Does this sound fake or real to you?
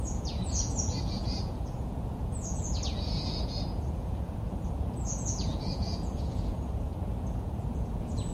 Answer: fake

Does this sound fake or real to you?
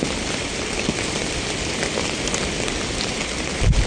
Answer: real